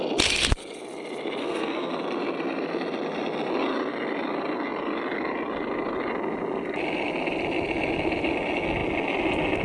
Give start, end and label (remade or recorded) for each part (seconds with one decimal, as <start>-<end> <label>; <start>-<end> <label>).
0.0-1.4 recorded; 1.4-1.9 remade; 1.9-9.6 recorded